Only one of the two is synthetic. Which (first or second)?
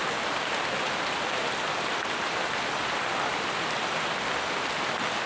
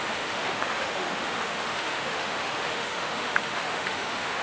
second